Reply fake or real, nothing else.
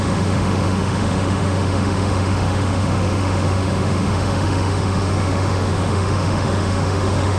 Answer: fake